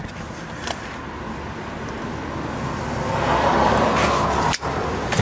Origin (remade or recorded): recorded